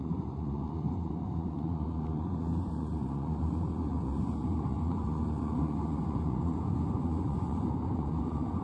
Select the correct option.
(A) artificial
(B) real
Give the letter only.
A